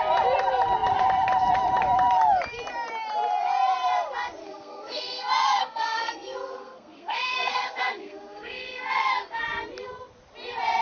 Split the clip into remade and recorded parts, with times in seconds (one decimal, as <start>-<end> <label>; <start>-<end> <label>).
0.0-4.4 recorded; 4.4-9.4 remade; 9.4-10.8 recorded